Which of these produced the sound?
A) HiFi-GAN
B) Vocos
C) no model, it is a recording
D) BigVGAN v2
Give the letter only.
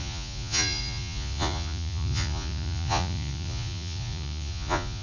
B